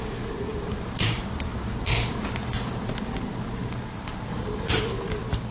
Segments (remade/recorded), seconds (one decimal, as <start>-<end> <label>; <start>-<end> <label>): 0.0-0.5 recorded; 0.5-3.0 remade; 3.0-3.6 recorded; 3.6-4.8 remade; 4.8-5.5 recorded